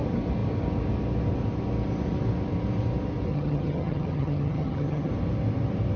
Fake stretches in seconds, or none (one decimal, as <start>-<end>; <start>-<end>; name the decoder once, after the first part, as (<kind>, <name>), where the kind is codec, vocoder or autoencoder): 3.3-5.1 (vocoder, HiFi-GAN)